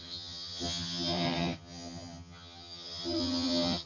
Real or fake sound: fake